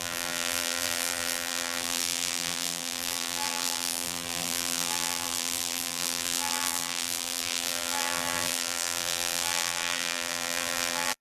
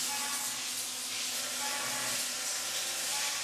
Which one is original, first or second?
second